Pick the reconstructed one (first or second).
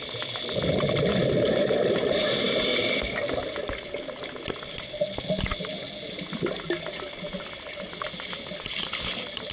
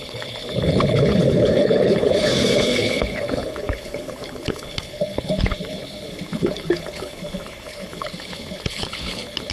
second